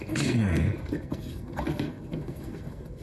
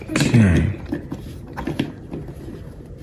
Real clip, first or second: second